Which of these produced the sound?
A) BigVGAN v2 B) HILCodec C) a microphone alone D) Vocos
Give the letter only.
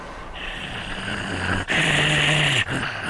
C